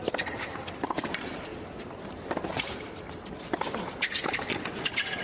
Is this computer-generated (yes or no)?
no